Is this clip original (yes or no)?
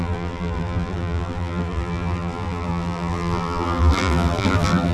no